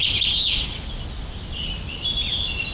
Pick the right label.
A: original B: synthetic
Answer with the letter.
A